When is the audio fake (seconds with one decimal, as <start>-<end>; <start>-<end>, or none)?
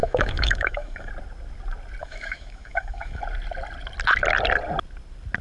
0.0-1.1; 2.0-3.2